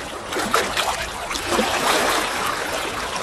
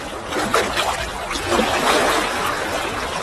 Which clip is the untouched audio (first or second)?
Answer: second